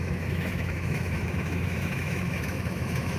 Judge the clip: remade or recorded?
remade